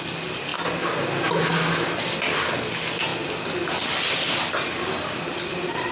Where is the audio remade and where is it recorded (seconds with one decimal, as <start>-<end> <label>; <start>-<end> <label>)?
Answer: 0.0-5.9 recorded